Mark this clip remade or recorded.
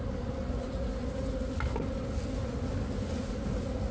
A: recorded